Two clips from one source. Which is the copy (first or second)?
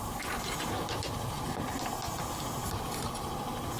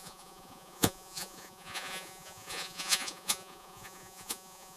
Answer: second